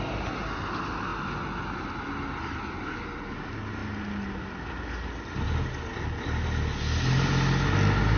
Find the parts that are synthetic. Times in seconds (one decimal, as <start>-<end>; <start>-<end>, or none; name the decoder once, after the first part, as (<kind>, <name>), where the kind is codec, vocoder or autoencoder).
none